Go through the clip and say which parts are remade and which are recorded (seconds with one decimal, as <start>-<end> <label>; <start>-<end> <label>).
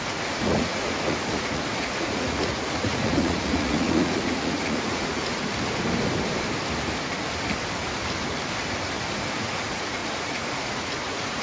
0.0-5.5 remade; 5.5-9.4 recorded; 9.4-11.4 remade